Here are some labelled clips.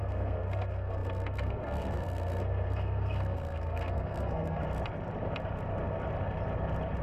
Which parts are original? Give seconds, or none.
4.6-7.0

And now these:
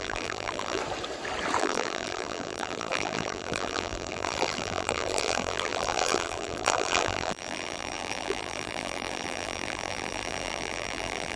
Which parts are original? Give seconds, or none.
0.8-1.6